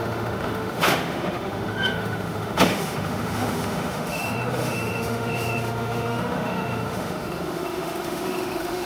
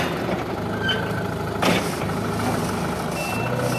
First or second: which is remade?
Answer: first